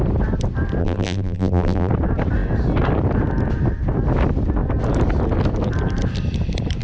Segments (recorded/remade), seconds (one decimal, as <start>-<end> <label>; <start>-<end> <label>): 0.0-0.8 recorded; 0.8-1.9 remade; 1.9-6.8 recorded

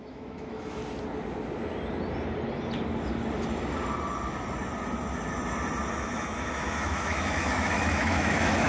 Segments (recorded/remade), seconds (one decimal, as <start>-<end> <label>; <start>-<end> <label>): 0.0-0.8 remade; 0.8-5.9 recorded; 5.9-8.7 remade

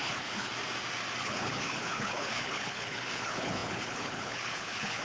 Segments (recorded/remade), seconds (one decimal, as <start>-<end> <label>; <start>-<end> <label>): 0.0-0.5 remade; 0.5-1.2 recorded; 1.2-5.0 remade

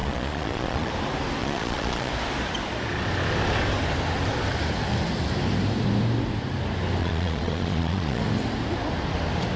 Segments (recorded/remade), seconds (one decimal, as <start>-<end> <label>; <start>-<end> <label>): 0.0-0.9 remade; 0.9-1.4 recorded; 1.4-2.1 remade; 2.1-7.0 recorded; 7.0-8.2 remade; 8.2-9.6 recorded

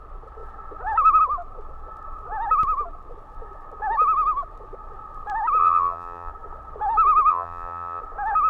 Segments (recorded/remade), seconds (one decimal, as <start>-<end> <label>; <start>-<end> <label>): 0.0-5.6 recorded; 5.6-6.3 remade; 6.3-7.3 recorded; 7.3-8.0 remade; 8.0-8.5 recorded

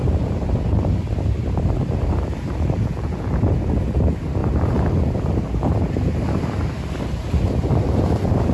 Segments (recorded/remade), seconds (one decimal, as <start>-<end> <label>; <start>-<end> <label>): 0.0-8.5 remade

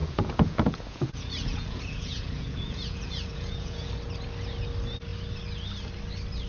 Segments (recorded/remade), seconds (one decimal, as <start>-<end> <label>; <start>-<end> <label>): 0.0-3.9 remade; 3.9-6.5 recorded

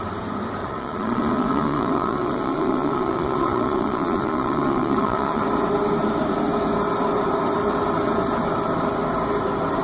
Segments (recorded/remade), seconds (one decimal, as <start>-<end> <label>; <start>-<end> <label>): 0.0-0.6 recorded; 0.6-5.4 remade; 5.4-9.8 recorded